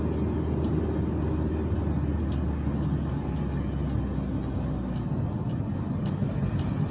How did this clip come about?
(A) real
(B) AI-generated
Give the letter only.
A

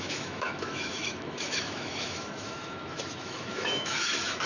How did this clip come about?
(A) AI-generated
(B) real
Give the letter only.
A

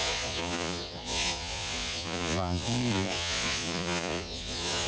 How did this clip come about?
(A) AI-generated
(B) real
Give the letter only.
A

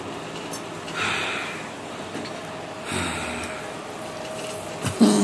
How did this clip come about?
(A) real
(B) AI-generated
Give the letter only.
A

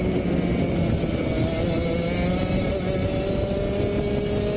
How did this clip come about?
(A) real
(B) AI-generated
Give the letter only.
A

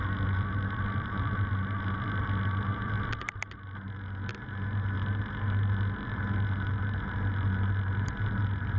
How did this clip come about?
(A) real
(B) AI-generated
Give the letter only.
A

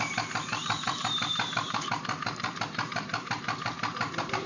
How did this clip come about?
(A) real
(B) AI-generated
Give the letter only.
B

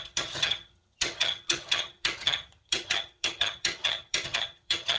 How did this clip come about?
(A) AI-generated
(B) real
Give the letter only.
A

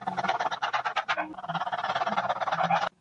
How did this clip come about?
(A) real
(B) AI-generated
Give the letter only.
A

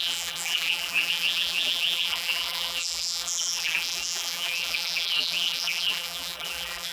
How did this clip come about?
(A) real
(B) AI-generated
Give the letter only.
B